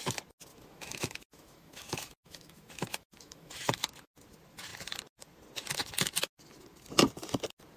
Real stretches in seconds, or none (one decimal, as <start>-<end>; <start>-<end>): 0.0-0.5; 3.8-7.8